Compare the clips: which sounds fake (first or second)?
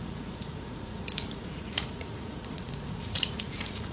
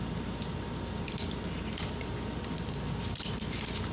first